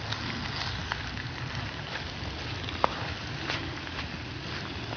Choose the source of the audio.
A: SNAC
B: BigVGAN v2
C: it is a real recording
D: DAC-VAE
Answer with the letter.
C